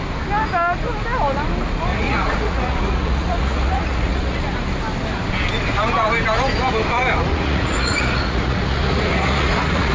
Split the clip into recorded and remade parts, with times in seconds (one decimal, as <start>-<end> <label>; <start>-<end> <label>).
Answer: 0.0-1.9 recorded; 1.9-4.4 remade; 4.4-7.3 recorded; 7.3-9.9 remade